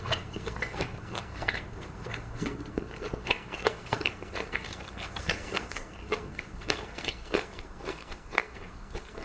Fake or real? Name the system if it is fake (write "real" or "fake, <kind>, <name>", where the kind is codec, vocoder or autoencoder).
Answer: fake, codec, SNAC